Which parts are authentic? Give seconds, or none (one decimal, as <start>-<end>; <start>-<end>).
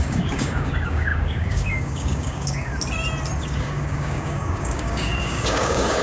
2.7-3.4